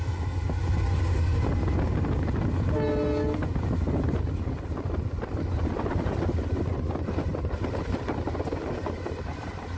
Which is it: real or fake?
real